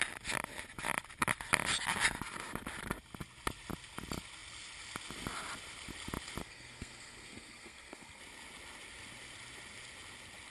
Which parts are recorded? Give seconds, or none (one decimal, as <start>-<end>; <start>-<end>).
0.0-6.4; 8.2-10.5